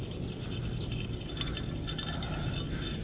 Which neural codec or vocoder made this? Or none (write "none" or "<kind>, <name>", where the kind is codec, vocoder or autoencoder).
none